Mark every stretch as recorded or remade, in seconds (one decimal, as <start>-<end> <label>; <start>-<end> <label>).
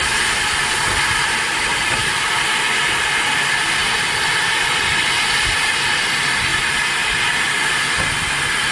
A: 0.0-4.9 recorded; 4.9-5.6 remade; 5.6-8.7 recorded